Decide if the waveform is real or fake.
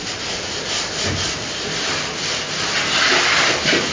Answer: real